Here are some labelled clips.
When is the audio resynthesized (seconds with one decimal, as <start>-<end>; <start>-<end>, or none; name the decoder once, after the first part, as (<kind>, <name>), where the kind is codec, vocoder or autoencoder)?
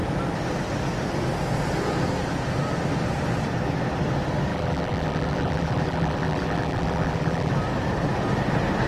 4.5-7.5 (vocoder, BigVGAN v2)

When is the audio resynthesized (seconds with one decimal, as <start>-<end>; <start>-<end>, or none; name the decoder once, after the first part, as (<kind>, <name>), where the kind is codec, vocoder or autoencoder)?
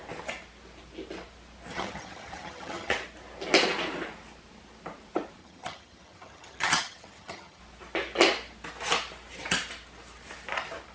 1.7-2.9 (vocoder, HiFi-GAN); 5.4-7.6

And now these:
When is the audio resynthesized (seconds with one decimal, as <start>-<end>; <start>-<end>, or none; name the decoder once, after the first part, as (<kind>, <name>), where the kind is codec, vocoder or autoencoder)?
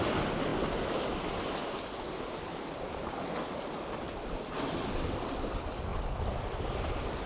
5.9-7.3 (vocoder, BigVGAN v2)